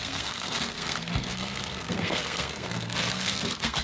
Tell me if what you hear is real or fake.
fake